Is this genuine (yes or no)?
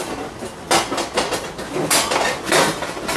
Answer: yes